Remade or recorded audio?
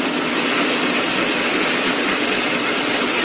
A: recorded